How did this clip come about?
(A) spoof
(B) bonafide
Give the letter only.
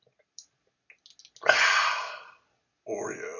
B